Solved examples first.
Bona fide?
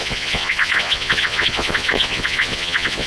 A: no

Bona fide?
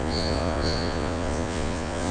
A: no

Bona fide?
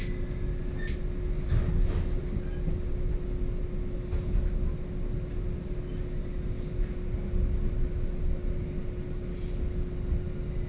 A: yes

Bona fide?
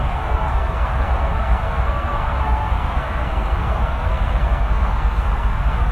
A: no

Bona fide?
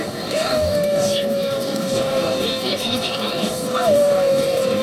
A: no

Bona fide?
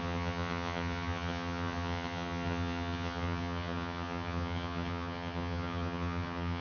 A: no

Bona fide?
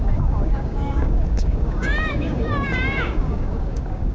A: no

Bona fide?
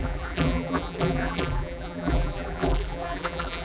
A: no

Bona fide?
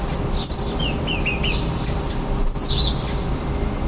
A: yes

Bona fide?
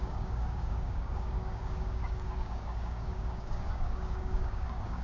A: no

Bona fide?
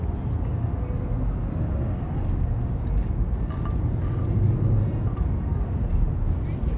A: yes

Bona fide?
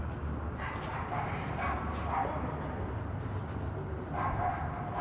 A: yes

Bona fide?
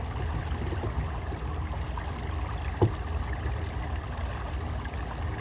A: yes